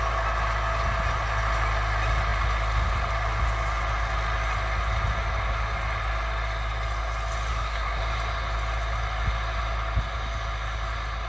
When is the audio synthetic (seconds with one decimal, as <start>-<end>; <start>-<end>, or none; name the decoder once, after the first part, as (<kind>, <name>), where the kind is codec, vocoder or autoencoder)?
7.5-8.0 (codec, SNAC)